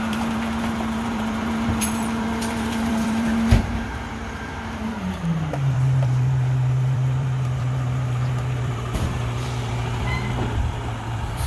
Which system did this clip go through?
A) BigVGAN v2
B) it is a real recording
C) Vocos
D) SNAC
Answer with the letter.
A